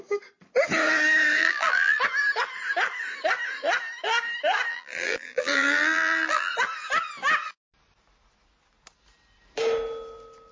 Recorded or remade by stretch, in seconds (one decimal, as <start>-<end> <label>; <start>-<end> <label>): 0.0-1.4 recorded; 1.4-2.0 remade; 2.0-4.7 recorded; 4.7-6.5 remade; 6.5-10.5 recorded